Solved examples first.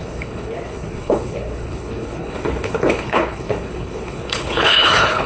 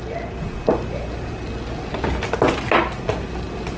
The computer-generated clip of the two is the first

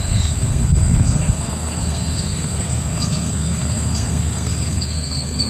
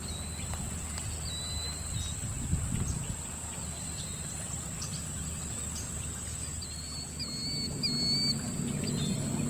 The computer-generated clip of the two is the first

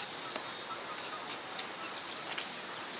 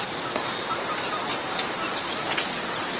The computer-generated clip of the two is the second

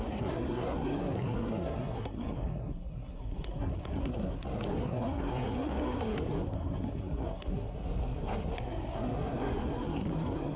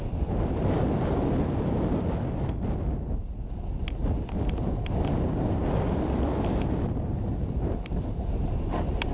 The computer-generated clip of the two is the first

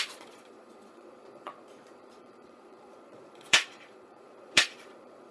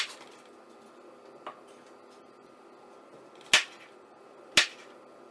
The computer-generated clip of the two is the first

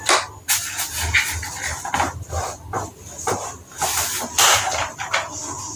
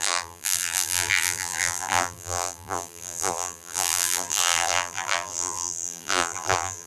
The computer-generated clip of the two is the second